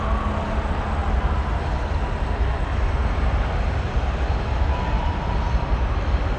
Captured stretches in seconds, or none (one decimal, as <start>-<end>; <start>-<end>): 0.0-6.4